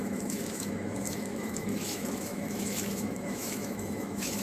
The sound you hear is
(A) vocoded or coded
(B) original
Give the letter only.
A